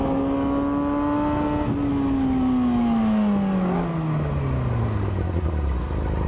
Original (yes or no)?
yes